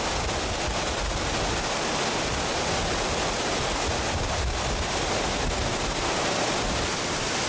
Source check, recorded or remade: recorded